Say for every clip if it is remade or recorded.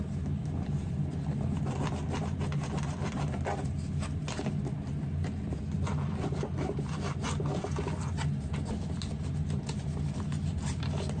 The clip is recorded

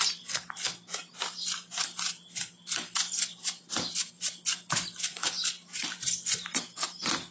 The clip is recorded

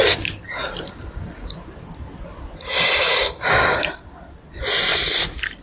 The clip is recorded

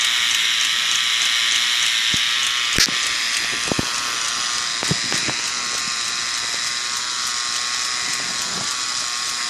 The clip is recorded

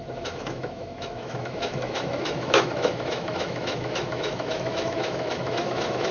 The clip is remade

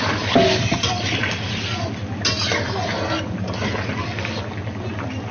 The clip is recorded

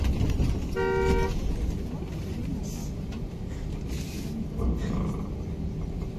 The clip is recorded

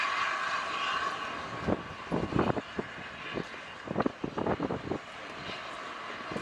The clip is recorded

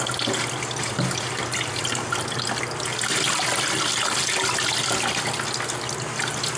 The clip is recorded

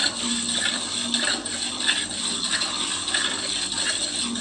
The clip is recorded